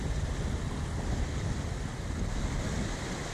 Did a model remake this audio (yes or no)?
no